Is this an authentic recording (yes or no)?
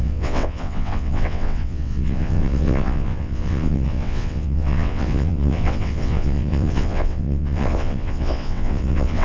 no